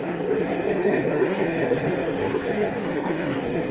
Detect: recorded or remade remade